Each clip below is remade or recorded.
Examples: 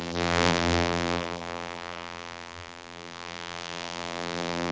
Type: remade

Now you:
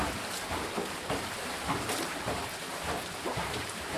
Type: remade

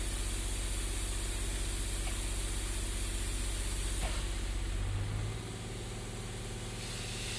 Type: recorded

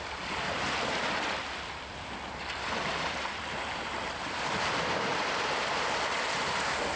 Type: recorded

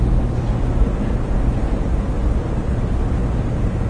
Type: recorded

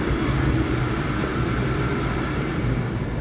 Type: remade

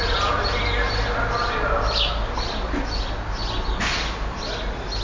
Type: recorded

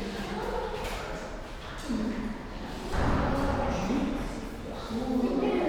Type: recorded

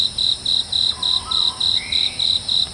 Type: remade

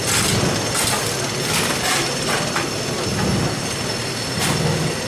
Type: recorded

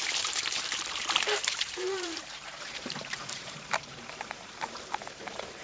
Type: remade